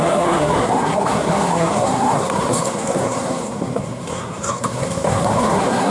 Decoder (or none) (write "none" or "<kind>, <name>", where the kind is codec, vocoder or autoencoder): codec, SNAC